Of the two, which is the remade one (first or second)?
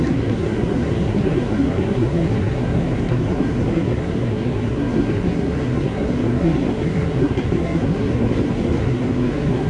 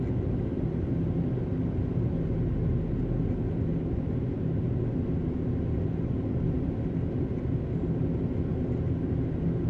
first